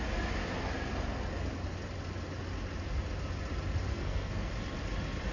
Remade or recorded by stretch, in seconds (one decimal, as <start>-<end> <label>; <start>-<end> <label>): 0.0-3.9 recorded; 3.9-4.5 remade; 4.5-5.3 recorded